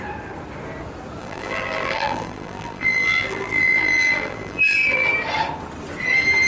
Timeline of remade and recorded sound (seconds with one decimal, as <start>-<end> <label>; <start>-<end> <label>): 0.0-1.2 recorded; 1.2-5.1 remade; 5.1-6.5 recorded